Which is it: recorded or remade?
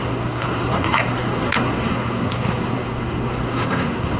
remade